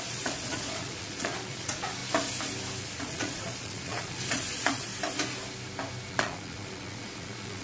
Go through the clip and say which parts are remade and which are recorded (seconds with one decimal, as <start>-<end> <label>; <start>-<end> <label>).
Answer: 0.0-2.0 remade; 2.0-2.8 recorded; 2.8-4.9 remade; 4.9-6.1 recorded; 6.1-7.6 remade